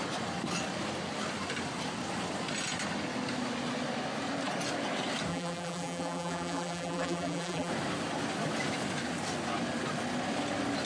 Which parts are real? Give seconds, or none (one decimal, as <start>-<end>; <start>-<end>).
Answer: 0.0-5.3; 7.7-10.9